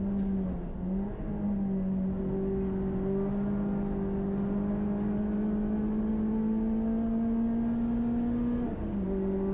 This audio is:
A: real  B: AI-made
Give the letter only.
A